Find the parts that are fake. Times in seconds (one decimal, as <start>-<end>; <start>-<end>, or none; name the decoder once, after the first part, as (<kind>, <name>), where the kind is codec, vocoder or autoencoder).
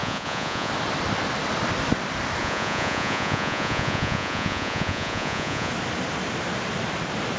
0.0-0.7 (vocoder, Vocos); 2.4-5.7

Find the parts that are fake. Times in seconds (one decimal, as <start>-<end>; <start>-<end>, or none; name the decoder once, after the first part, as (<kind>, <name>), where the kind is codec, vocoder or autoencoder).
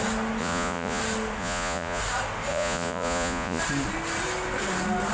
0.4-1.0 (vocoder, Vocos); 1.4-2.0; 2.5-3.6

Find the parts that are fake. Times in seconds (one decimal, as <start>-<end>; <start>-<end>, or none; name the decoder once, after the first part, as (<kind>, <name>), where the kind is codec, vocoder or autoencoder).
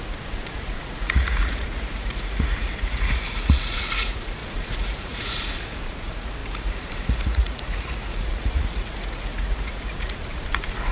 0.0-10.9 (vocoder, Vocos)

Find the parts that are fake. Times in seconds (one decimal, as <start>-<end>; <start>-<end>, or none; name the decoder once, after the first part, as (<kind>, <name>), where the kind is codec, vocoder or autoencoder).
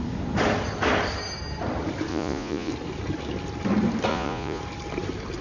2.1-2.7 (vocoder, Vocos); 4.1-4.6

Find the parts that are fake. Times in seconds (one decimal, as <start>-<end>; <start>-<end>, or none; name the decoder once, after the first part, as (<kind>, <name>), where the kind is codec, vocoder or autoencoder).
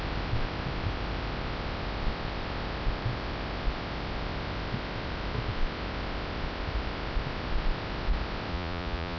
8.5-9.2 (vocoder, Vocos)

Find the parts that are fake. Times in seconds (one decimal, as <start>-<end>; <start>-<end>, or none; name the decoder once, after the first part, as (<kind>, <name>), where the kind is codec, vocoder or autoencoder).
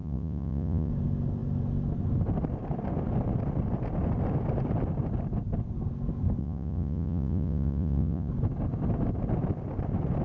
0.0-0.9 (vocoder, Vocos); 6.4-8.3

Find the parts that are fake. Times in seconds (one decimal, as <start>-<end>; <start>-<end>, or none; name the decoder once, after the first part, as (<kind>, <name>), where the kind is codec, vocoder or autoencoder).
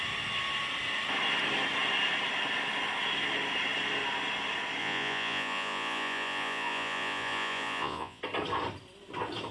4.8-8.2 (vocoder, Vocos)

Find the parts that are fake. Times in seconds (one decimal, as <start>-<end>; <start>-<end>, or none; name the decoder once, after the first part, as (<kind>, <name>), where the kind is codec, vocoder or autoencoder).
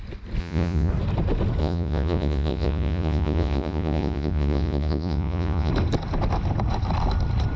0.4-0.9 (vocoder, Vocos); 1.6-5.7